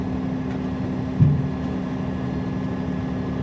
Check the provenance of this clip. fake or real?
real